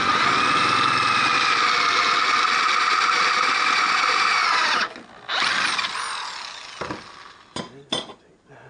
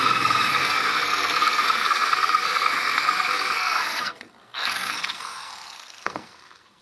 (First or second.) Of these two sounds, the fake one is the second